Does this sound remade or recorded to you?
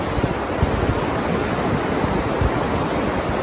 recorded